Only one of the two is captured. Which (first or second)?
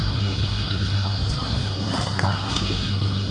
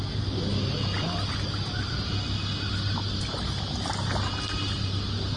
second